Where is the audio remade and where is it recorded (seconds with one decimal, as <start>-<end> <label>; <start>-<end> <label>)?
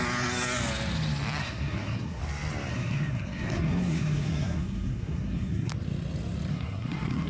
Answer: 0.0-1.4 recorded; 1.4-2.2 remade; 2.2-2.7 recorded; 2.7-5.7 remade; 5.7-6.5 recorded; 6.5-7.3 remade